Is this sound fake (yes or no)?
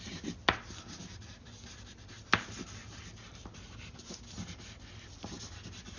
no